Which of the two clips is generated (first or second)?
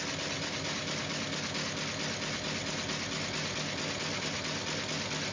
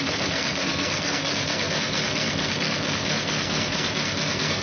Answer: second